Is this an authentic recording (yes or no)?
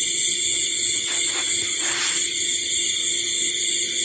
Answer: yes